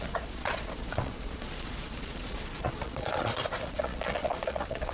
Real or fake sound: fake